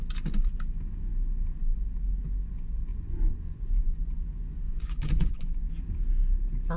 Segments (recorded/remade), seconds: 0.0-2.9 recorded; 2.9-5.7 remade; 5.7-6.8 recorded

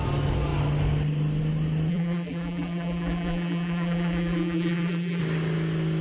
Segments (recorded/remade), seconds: 0.0-1.9 recorded; 1.9-5.2 remade; 5.2-6.0 recorded

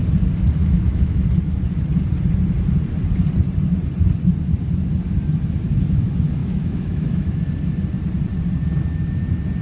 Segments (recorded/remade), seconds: 0.0-0.6 recorded; 0.6-1.2 remade; 1.2-6.4 recorded; 6.4-7.4 remade; 7.4-9.6 recorded

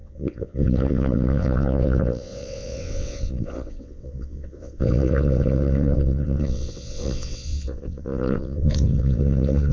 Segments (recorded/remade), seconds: 0.0-9.7 remade

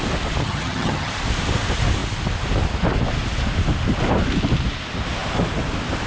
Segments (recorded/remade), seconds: 0.0-0.4 recorded; 0.4-1.1 remade; 1.1-6.1 recorded

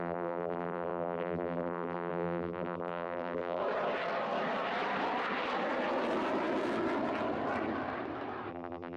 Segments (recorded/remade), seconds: 0.0-3.6 remade; 3.6-8.5 recorded; 8.5-9.0 remade

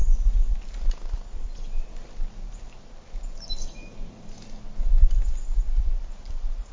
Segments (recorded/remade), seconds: 0.0-2.3 remade; 2.3-6.7 recorded

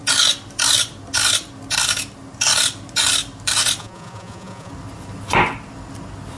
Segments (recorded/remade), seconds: 0.0-3.8 recorded; 3.8-4.7 remade; 4.7-6.4 recorded